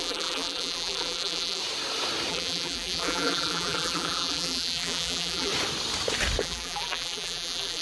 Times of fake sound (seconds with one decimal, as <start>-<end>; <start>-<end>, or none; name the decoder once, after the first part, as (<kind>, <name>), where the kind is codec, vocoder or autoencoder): 0.0-1.6 (vocoder, BigVGAN v2); 2.3-5.5; 6.4-7.8